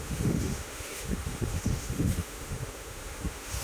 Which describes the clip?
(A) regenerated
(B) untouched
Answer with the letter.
A